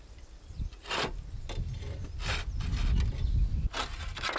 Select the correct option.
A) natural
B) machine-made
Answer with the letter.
A